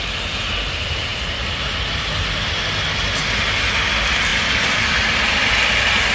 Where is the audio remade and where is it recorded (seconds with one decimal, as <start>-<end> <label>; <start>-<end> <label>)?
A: 0.0-6.1 recorded